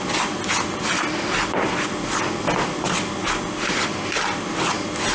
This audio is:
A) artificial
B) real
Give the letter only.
B